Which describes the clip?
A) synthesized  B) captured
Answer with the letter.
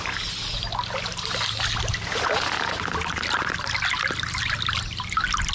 B